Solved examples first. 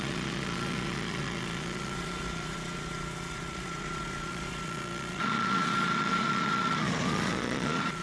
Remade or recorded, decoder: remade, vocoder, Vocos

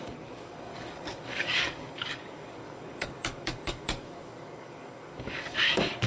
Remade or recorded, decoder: remade, codec, DAC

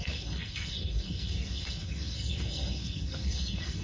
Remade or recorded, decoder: remade, codec, SNAC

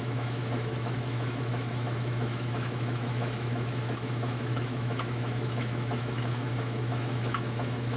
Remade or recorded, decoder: remade, autoencoder, DAC-VAE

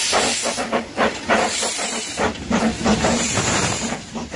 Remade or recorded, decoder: remade, vocoder, BigVGAN v2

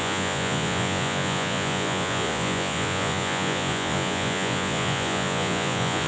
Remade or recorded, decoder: remade, vocoder, Vocos